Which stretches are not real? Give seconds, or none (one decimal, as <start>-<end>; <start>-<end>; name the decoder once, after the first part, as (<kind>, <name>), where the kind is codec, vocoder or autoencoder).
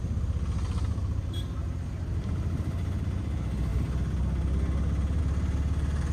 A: none